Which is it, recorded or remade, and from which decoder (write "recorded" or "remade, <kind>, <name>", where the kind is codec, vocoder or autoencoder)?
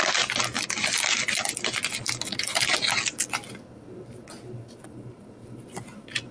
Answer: recorded